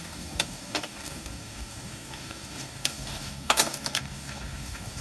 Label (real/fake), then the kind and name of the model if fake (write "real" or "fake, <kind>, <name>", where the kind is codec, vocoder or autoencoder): fake, codec, DAC